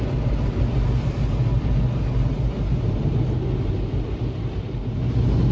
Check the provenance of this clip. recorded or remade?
recorded